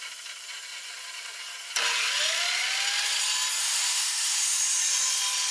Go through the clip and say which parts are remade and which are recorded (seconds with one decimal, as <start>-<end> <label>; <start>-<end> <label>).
0.0-3.6 recorded; 3.6-4.6 remade; 4.6-5.5 recorded